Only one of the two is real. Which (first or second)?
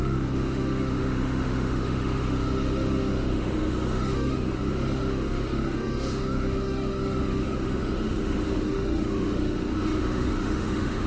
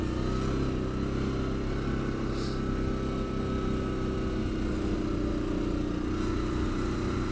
second